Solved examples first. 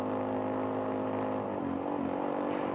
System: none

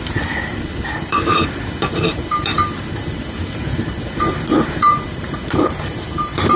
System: vocoder, BigVGAN v2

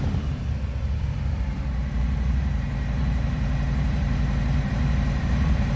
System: vocoder, BigVGAN v2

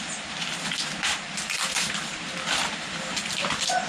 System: vocoder, BigVGAN v2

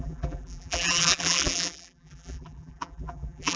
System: vocoder, BigVGAN v2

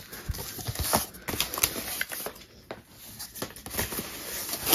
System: none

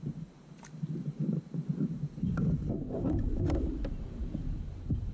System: vocoder, BigVGAN v2